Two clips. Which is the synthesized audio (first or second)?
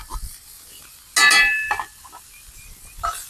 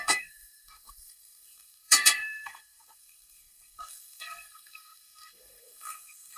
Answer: second